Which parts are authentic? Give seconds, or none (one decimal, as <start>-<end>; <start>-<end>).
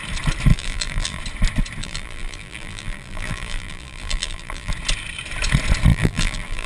0.0-0.5; 1.2-1.8; 4.7-5.9